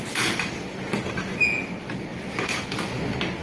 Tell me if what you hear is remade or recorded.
recorded